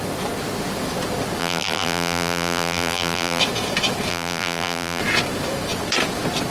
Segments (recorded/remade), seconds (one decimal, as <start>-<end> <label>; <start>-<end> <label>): 0.0-1.4 recorded; 1.4-3.4 remade; 3.4-4.1 recorded; 4.1-5.0 remade; 5.0-6.5 recorded